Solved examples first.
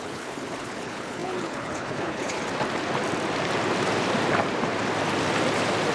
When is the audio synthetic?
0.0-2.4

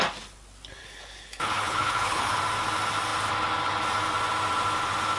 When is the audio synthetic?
0.8-2.4

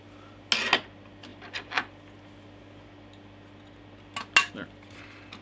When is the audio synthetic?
none